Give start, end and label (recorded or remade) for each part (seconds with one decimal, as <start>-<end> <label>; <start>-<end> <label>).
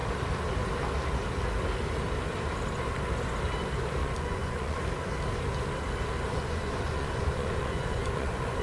0.0-4.0 recorded; 4.0-4.8 remade; 4.8-6.3 recorded; 6.3-8.6 remade